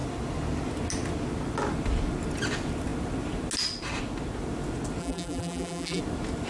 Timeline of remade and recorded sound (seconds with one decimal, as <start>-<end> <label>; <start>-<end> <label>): 0.0-5.0 recorded; 5.0-6.0 remade; 6.0-6.5 recorded